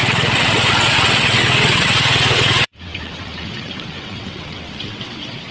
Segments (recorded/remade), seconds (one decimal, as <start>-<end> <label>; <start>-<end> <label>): 0.0-5.5 remade